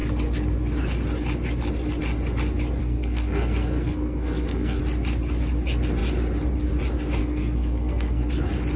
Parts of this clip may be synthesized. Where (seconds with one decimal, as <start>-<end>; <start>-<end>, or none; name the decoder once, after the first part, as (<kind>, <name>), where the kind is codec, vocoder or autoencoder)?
2.8-4.8 (codec, SNAC); 7.2-8.3